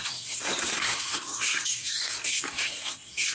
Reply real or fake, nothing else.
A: fake